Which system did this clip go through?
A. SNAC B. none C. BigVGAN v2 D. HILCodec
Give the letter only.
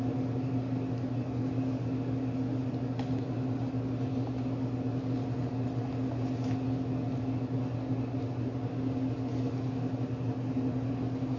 B